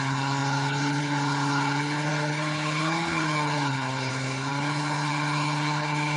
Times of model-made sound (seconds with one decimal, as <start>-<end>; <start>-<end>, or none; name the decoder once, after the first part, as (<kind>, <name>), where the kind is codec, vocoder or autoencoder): 0.0-6.2 (codec, HILCodec)